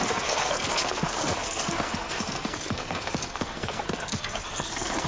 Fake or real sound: fake